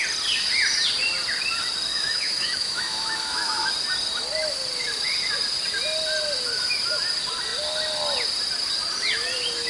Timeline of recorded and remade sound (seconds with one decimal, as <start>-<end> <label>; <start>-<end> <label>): 0.0-1.9 recorded; 1.9-3.7 remade; 3.7-9.7 recorded